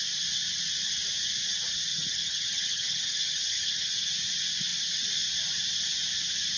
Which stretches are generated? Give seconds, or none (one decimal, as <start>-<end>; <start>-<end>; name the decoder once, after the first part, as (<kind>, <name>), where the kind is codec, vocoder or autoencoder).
1.9-4.1 (vocoder, HiFi-GAN)